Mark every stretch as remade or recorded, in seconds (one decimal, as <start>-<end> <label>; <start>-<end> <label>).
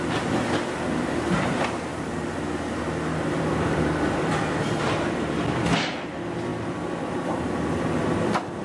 0.0-1.9 remade; 1.9-3.3 recorded; 3.3-8.6 remade